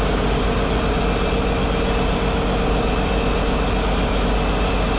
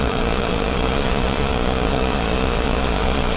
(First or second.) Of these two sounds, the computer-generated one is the second